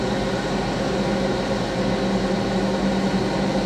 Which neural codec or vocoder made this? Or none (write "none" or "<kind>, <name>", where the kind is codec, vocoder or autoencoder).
none